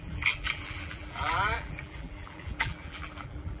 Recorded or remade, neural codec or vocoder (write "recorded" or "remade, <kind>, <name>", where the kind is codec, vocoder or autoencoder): remade, vocoder, BigVGAN v2